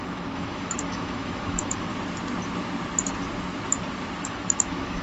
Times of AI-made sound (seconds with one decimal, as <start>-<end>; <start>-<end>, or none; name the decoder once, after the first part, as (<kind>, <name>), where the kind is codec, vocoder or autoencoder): 0.0-1.9 (autoencoder, DAC-VAE); 4.2-5.0